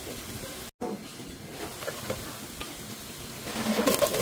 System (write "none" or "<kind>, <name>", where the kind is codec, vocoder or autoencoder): none